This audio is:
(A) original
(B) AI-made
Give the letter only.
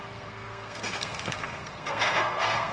B